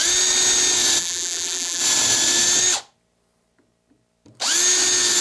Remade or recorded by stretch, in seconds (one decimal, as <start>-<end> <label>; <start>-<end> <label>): 0.0-1.0 recorded; 1.0-1.8 remade; 1.8-5.2 recorded